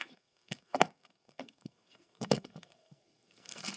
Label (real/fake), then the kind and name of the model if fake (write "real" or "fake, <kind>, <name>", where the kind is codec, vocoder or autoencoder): fake, codec, SNAC